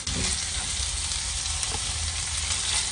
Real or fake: real